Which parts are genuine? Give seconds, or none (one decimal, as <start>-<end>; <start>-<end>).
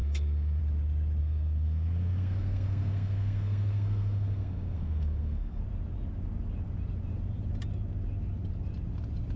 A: 0.6-1.2; 5.6-9.4